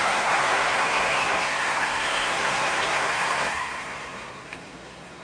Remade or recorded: remade